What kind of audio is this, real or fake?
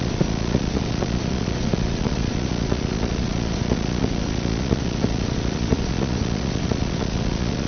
fake